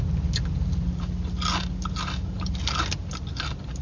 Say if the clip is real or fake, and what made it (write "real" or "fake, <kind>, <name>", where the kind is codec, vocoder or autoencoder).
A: real